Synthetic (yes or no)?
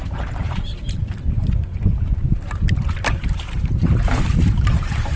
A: yes